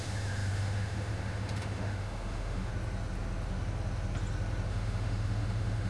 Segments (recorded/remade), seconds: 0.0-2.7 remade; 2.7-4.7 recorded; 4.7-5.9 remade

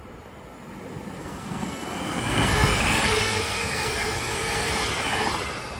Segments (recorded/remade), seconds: 0.0-1.2 recorded; 1.2-4.7 remade; 4.7-5.8 recorded

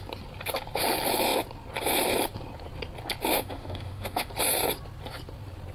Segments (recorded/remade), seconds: 0.0-3.3 recorded; 3.3-4.3 remade; 4.3-5.7 recorded

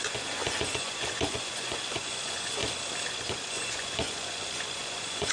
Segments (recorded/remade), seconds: 0.0-2.6 remade; 2.6-3.1 recorded; 3.1-5.3 remade

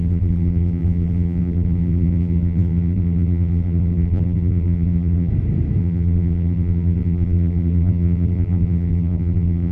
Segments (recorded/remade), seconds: 0.0-5.3 remade; 5.3-5.8 recorded; 5.8-9.7 remade

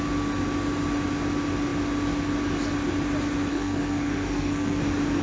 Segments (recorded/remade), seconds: 0.0-3.5 recorded; 3.5-4.8 remade; 4.8-5.2 recorded

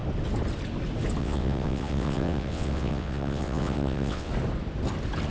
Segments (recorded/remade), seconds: 0.0-1.2 recorded; 1.2-4.3 remade; 4.3-5.3 recorded